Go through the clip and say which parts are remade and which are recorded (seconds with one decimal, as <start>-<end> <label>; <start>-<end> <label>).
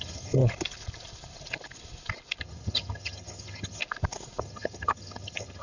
0.0-0.4 remade; 0.4-2.4 recorded; 2.4-3.8 remade; 3.8-4.4 recorded; 4.4-5.6 remade